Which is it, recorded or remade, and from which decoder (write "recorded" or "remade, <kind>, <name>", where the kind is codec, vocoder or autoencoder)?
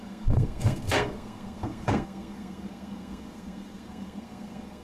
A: remade, codec, SNAC